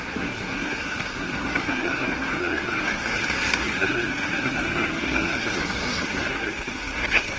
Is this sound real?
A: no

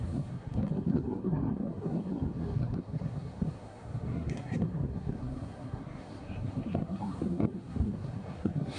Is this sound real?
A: no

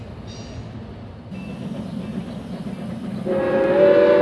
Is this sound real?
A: yes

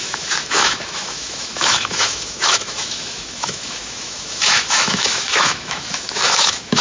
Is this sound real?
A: no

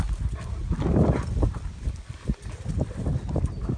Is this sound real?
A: yes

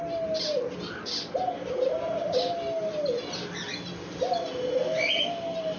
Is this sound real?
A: yes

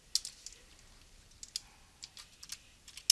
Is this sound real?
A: yes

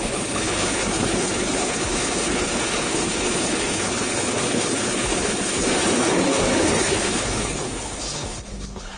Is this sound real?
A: no